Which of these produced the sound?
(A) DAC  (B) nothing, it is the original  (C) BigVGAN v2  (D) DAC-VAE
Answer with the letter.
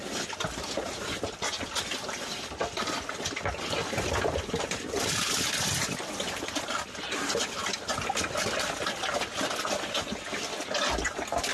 B